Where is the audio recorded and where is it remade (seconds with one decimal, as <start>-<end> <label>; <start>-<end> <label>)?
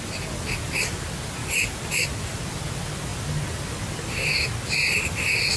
0.0-5.6 recorded